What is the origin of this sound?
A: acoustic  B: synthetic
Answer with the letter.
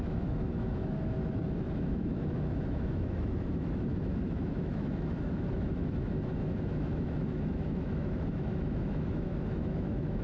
B